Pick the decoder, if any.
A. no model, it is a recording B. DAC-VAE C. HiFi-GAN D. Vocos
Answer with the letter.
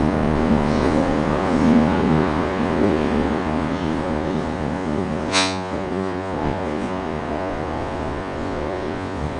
D